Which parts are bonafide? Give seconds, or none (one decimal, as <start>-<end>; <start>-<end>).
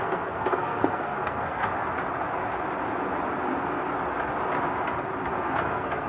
1.7-5.3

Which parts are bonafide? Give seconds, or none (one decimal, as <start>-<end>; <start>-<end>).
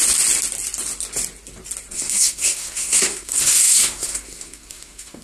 0.0-1.9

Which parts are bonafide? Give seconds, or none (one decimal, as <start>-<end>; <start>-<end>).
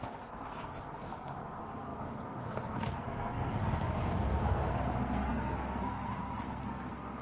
none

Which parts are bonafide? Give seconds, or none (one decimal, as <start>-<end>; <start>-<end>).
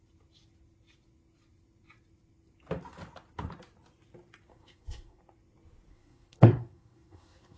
0.0-4.5; 5.2-5.9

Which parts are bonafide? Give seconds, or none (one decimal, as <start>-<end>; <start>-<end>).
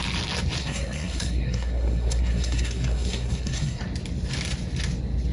0.0-0.6; 3.8-5.3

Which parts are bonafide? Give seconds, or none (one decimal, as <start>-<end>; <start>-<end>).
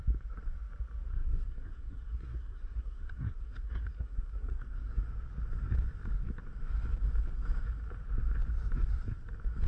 0.0-1.0; 5.0-9.7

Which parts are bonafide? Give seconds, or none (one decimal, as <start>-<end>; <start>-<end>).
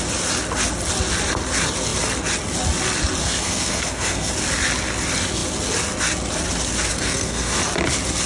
0.0-3.2; 4.3-6.9; 7.6-8.3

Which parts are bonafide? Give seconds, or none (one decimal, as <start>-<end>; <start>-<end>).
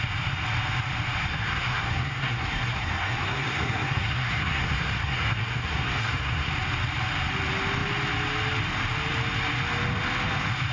0.0-1.3; 6.5-10.7